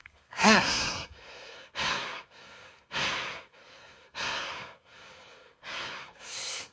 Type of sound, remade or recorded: remade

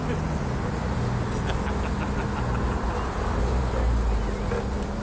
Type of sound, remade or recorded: recorded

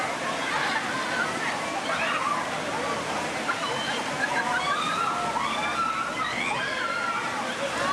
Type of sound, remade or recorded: recorded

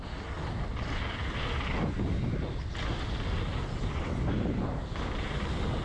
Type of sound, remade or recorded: recorded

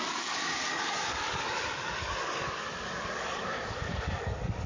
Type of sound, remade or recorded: remade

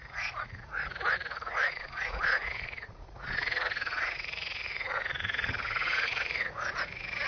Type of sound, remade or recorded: remade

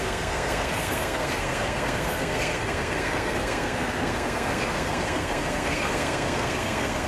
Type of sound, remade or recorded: remade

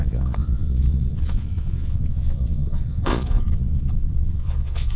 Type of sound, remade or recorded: remade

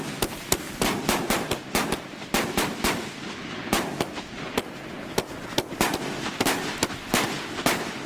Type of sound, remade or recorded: recorded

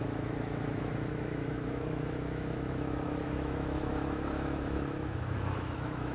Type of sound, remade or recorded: remade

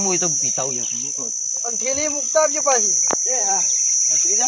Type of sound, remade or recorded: remade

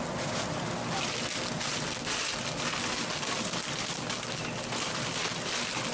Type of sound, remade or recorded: recorded